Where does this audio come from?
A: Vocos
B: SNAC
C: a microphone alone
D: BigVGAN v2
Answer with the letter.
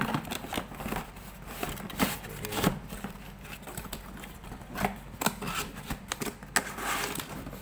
C